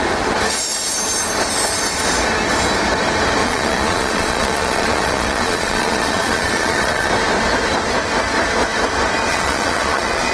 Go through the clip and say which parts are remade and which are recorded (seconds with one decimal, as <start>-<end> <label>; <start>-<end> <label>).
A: 0.0-3.4 recorded; 3.4-7.1 remade; 7.1-9.3 recorded; 9.3-10.3 remade

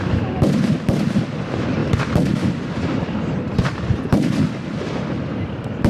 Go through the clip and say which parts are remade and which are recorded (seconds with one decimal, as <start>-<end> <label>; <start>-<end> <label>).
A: 0.0-5.9 recorded

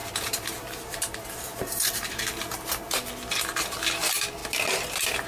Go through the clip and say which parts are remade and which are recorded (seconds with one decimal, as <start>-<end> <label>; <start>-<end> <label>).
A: 0.0-3.1 remade; 3.1-5.3 recorded

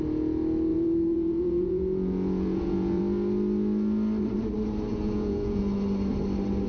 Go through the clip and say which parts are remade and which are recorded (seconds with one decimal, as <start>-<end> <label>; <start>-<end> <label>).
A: 0.0-0.7 recorded; 0.7-3.0 remade; 3.0-4.9 recorded; 4.9-5.6 remade; 5.6-6.7 recorded

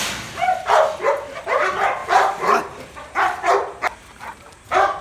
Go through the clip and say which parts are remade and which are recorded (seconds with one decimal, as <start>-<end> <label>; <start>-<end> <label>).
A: 0.0-2.0 recorded; 2.0-5.0 remade

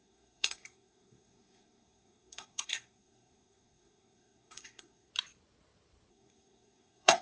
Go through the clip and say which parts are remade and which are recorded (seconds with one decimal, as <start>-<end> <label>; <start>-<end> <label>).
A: 0.0-5.1 remade; 5.1-6.1 recorded; 6.1-7.2 remade

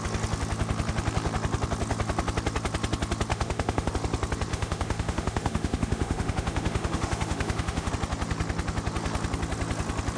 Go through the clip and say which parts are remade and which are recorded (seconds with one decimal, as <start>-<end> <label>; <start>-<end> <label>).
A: 0.0-3.3 recorded; 3.3-3.9 remade; 3.9-4.5 recorded; 4.5-7.9 remade; 7.9-10.2 recorded

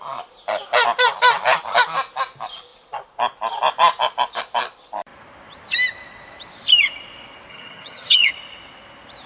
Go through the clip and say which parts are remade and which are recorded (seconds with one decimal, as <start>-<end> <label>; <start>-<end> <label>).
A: 0.0-7.5 recorded; 7.5-8.3 remade; 8.3-9.3 recorded